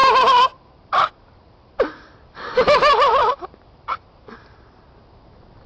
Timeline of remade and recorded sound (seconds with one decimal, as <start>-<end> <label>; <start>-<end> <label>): 0.0-2.2 remade; 2.2-3.1 recorded; 3.1-4.2 remade; 4.2-5.7 recorded